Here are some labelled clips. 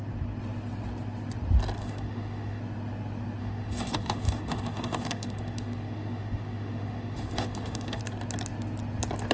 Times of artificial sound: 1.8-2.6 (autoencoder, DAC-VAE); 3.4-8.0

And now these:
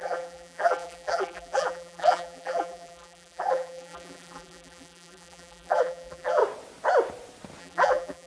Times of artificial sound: 0.0-6.4 (vocoder, BigVGAN v2); 7.6-8.3

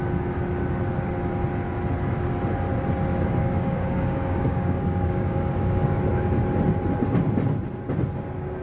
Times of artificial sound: 3.4-6.0 (codec, DAC)